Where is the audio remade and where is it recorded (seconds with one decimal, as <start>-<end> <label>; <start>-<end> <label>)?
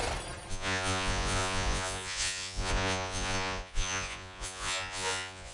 0.0-0.5 recorded; 0.5-5.5 remade